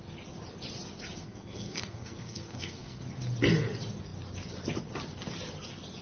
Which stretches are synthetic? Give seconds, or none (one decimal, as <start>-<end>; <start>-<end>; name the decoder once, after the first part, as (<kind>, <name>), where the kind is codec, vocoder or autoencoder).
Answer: 1.2-3.0 (codec, SNAC)